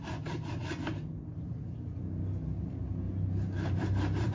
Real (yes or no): yes